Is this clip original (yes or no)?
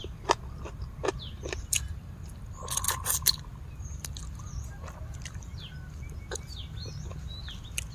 yes